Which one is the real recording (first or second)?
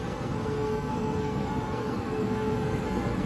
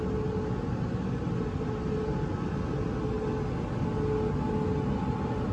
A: second